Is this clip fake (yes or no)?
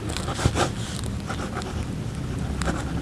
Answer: no